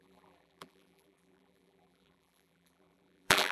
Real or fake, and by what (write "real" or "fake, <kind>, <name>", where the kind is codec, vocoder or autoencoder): fake, vocoder, BigVGAN v2